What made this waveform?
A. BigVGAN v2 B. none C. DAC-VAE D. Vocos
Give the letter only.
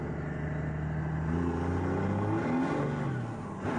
B